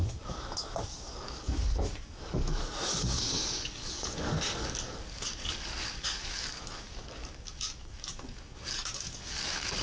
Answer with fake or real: fake